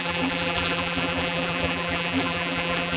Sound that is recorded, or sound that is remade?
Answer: remade